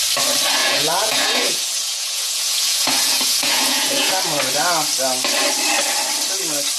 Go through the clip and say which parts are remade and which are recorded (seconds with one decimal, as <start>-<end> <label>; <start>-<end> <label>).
0.0-0.6 recorded; 0.6-4.1 remade; 4.1-6.8 recorded